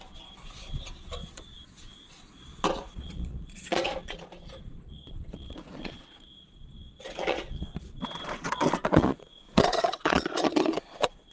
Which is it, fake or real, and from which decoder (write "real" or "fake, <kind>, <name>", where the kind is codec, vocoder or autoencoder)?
fake, vocoder, Vocos